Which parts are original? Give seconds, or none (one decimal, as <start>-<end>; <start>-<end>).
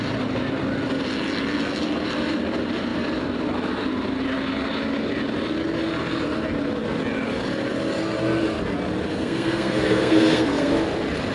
0.0-9.1; 10.7-11.3